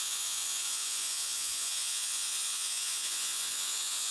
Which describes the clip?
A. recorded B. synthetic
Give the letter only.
B